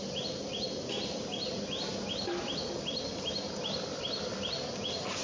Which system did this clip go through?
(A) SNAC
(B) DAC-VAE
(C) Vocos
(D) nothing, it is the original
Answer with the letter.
D